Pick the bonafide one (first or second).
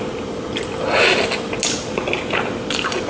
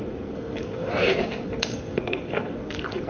first